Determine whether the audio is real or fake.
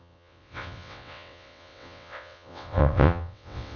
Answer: fake